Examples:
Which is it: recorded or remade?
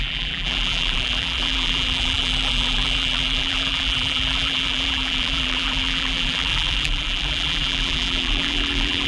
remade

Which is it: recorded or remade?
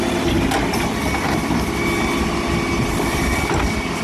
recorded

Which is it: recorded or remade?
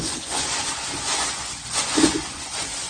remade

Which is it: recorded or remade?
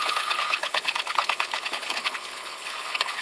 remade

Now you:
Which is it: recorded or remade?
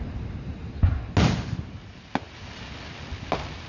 recorded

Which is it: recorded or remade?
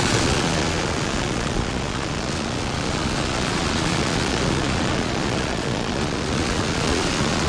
remade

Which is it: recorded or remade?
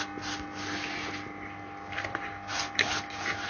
recorded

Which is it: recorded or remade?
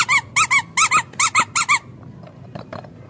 recorded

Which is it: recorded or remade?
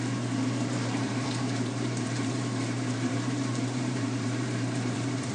remade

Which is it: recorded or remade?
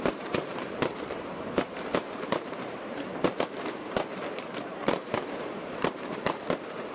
remade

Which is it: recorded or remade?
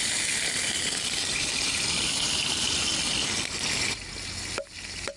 recorded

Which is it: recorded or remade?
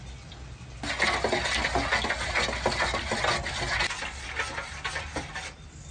recorded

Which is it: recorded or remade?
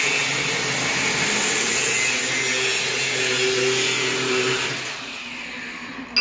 recorded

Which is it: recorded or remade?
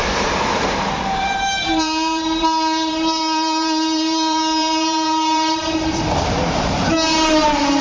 remade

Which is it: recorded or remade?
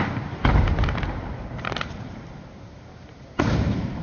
remade